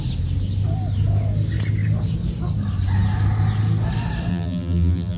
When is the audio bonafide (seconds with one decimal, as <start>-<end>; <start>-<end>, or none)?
0.0-4.3